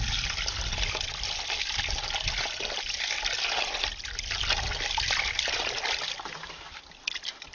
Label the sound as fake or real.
real